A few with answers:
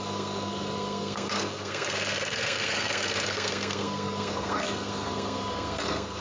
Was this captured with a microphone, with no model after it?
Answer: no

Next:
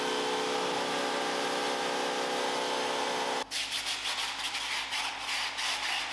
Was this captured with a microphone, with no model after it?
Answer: yes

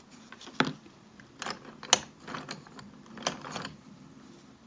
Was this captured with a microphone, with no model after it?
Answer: yes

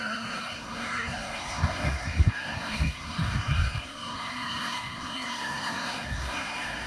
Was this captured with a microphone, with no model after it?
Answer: no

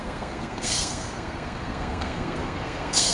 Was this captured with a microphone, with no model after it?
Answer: no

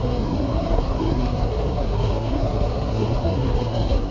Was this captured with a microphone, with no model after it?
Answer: no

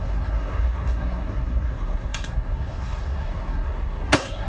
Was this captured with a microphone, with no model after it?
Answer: no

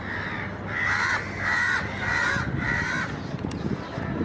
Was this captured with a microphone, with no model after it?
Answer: yes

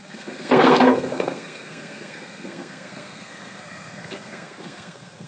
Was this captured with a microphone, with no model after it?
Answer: no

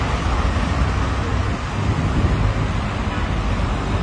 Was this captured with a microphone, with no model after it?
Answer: yes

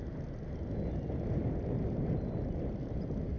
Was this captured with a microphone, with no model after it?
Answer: yes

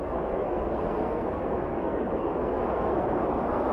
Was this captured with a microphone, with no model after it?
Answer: no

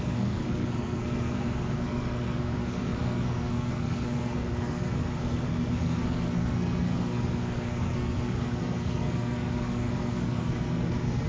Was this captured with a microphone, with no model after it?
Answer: no